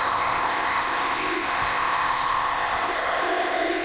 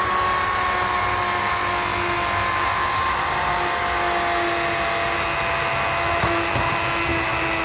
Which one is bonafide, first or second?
second